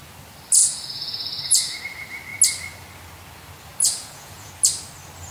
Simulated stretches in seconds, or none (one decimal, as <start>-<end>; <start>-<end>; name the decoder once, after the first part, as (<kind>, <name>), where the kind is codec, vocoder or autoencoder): 0.6-1.8 (vocoder, Vocos); 3.8-4.5